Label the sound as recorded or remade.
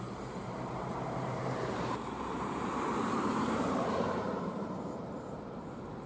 remade